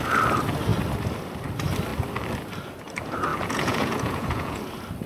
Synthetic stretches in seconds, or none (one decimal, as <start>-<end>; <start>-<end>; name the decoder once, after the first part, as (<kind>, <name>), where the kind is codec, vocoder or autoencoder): 3.3-4.6 (vocoder, Vocos)